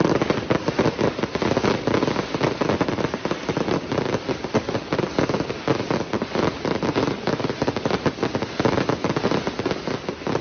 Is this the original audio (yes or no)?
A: yes